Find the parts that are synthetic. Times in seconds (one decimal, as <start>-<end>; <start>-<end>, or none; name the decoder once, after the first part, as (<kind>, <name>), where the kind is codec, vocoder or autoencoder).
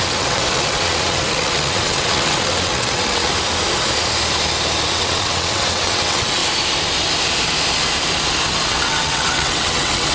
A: 0.0-3.3 (vocoder, WaveNeXt); 4.9-6.4; 8.7-10.1